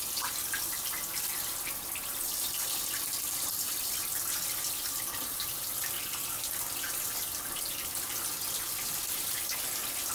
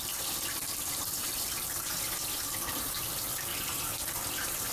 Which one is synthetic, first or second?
second